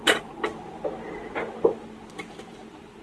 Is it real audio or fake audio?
real